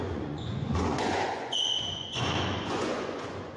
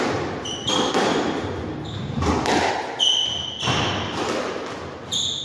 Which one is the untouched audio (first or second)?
second